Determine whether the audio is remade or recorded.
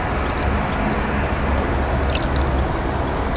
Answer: recorded